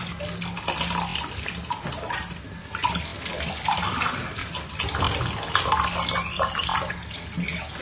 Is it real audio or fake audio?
real